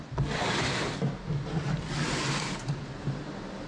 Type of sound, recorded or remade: recorded